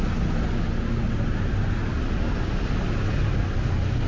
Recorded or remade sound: recorded